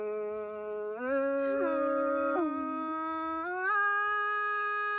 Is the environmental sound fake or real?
real